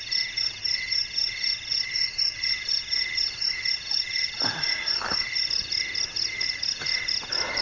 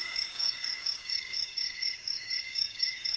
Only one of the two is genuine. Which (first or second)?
first